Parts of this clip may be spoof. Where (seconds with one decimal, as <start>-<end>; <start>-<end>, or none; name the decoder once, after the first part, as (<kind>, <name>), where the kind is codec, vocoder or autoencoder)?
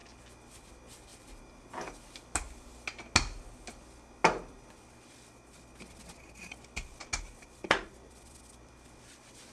1.1-1.6 (vocoder, BigVGAN v2)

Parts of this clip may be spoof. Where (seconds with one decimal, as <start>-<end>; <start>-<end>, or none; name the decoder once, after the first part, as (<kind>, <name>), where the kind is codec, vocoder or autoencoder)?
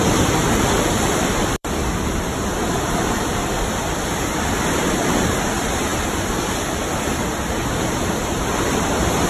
0.0-9.3 (vocoder, BigVGAN v2)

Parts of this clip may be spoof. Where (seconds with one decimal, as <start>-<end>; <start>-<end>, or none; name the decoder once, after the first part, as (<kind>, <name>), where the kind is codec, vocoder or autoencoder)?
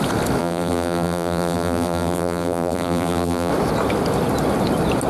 0.4-3.5 (vocoder, BigVGAN v2)